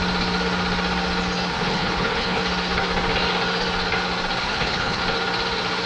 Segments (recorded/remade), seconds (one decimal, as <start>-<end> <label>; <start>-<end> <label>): 0.0-1.5 recorded; 1.5-2.4 remade; 2.4-4.4 recorded; 4.4-5.0 remade; 5.0-5.9 recorded